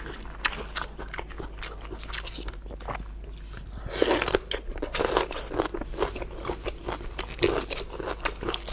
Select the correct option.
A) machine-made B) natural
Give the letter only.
B